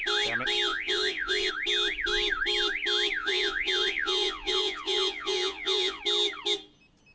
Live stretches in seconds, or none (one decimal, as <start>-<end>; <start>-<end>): 0.0-0.7; 1.5-3.2; 6.0-7.1